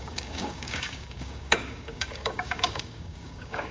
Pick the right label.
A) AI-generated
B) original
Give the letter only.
A